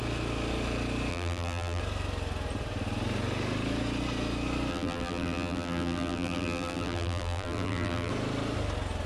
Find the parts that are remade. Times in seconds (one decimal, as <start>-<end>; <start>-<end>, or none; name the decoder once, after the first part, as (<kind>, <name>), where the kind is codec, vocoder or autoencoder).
1.1-1.8 (vocoder, BigVGAN v2); 4.7-8.1